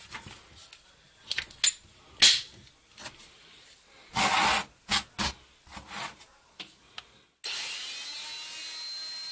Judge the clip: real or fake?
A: real